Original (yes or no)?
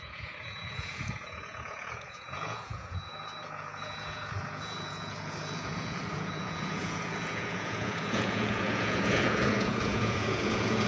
no